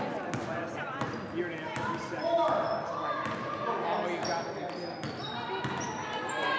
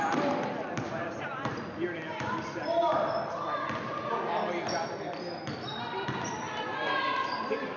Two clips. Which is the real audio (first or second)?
first